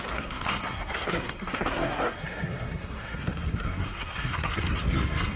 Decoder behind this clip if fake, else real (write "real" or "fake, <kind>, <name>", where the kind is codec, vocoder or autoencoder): fake, codec, SNAC